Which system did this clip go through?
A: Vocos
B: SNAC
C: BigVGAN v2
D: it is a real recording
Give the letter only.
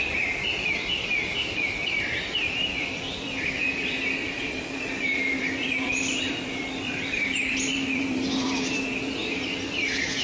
C